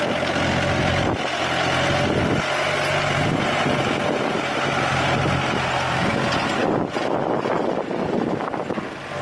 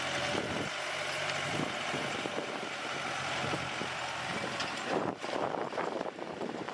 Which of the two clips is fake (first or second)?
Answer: second